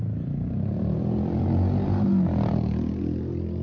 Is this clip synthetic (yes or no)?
yes